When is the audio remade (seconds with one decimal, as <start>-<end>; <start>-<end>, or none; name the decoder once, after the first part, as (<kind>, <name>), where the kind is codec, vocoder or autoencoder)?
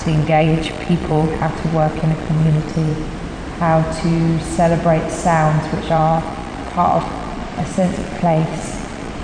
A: 0.0-2.9 (vocoder, Vocos); 5.9-9.2